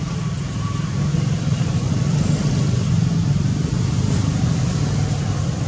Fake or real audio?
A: real